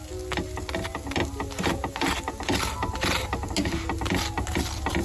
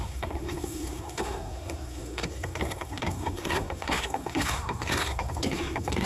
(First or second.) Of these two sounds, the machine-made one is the second